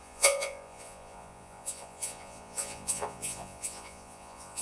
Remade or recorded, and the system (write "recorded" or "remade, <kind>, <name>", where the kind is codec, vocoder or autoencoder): remade, vocoder, Vocos